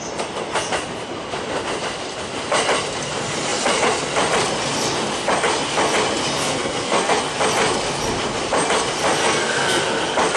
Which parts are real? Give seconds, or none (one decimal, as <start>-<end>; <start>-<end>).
0.0-6.4; 7.2-9.2; 9.8-10.4